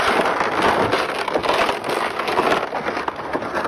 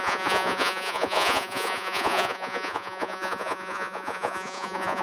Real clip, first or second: first